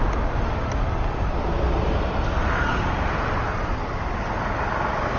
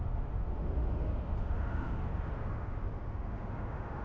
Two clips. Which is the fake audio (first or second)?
second